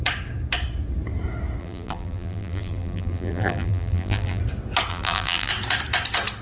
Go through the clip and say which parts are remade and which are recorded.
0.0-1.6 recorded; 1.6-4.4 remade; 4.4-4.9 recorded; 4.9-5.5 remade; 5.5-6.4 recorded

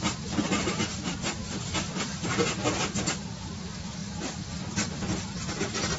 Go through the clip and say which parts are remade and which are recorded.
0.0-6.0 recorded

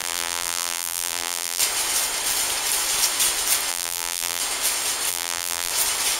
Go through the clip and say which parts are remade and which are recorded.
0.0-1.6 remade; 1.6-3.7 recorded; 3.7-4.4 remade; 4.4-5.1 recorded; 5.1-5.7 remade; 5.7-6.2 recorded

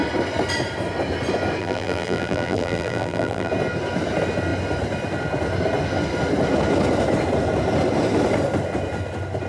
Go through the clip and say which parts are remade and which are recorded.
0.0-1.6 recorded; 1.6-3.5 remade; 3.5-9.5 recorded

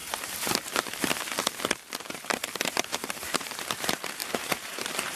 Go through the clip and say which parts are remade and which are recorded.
0.0-2.9 recorded; 2.9-5.2 remade

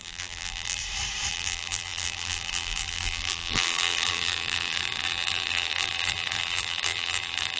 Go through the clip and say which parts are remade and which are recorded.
0.0-0.8 remade; 0.8-1.3 recorded; 1.3-7.6 remade

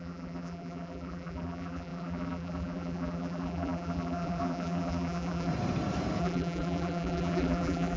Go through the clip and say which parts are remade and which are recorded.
0.0-5.5 remade; 5.5-6.2 recorded; 6.2-8.0 remade